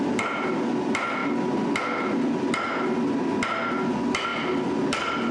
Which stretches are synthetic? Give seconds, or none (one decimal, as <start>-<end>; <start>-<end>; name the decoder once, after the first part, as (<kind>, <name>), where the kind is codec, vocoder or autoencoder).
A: none